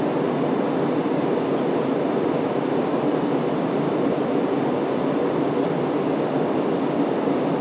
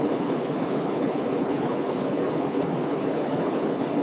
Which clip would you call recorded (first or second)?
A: first